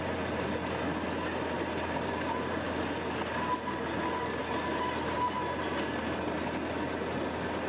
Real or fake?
real